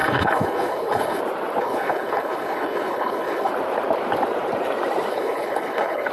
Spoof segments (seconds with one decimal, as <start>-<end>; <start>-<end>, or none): 0.0-1.2; 1.6-3.5; 5.1-6.1